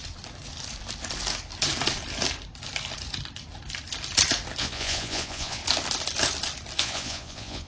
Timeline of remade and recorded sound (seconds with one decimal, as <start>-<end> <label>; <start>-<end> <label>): 0.0-4.6 recorded; 4.6-5.6 remade; 5.6-6.8 recorded; 6.8-7.7 remade